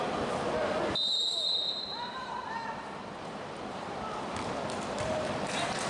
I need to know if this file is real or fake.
fake